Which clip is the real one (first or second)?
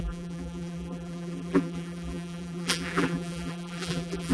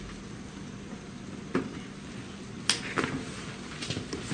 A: second